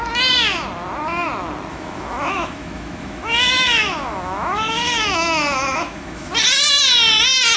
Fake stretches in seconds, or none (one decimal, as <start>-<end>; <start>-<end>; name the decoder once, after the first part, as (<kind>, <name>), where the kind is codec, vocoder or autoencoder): 1.7-6.3 (autoencoder, DAC-VAE)